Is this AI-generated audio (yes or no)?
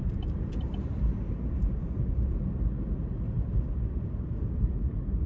no